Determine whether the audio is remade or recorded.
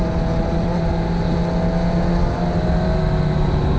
recorded